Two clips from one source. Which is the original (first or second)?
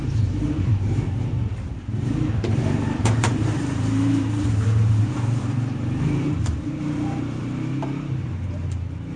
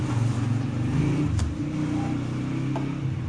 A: second